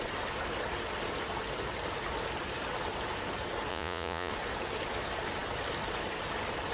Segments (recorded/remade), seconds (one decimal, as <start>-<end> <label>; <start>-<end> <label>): 0.0-3.7 recorded; 3.7-4.3 remade; 4.3-6.7 recorded